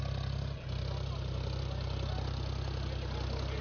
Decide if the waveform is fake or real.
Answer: real